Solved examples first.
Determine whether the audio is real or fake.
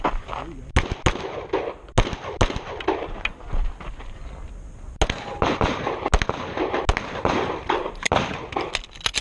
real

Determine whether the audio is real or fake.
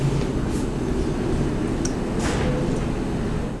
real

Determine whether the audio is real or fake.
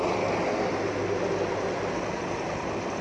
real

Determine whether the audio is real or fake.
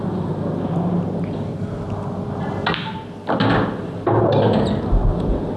real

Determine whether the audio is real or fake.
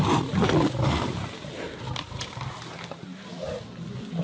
real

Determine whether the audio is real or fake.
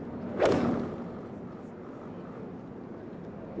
real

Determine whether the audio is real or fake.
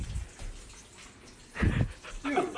real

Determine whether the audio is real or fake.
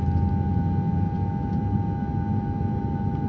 real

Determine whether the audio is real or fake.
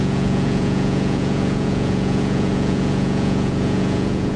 fake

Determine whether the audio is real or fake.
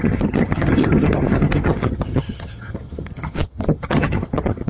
fake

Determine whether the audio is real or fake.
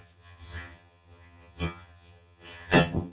fake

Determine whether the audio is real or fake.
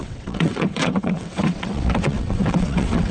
fake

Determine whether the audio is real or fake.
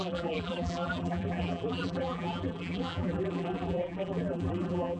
fake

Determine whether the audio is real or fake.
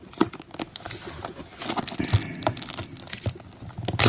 real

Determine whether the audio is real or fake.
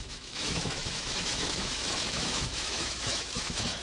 fake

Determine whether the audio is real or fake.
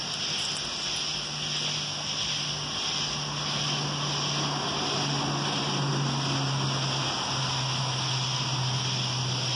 real